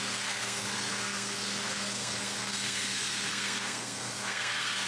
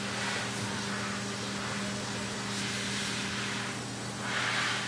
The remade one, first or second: first